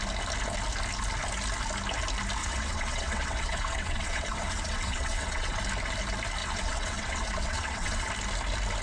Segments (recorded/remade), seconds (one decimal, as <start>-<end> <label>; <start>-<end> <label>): 0.0-2.4 recorded; 2.4-5.6 remade; 5.6-6.4 recorded; 6.4-8.1 remade; 8.1-8.8 recorded